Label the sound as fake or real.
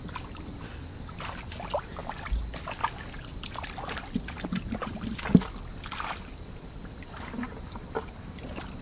real